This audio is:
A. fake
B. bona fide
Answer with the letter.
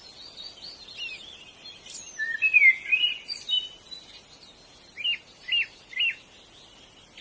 B